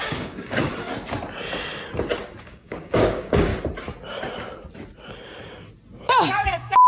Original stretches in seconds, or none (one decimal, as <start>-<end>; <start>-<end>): 0.7-2.4; 3.5-6.0